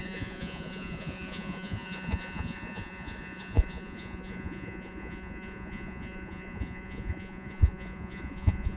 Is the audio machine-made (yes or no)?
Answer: yes